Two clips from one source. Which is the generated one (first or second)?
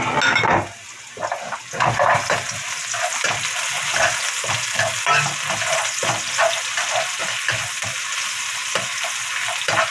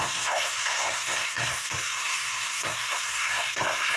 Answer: second